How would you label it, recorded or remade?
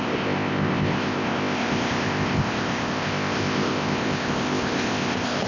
remade